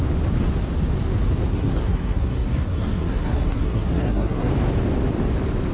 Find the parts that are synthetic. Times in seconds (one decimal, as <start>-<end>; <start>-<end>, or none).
1.5-4.5